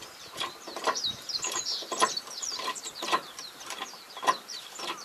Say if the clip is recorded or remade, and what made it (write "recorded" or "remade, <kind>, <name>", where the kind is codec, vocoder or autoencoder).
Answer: remade, vocoder, BigVGAN v2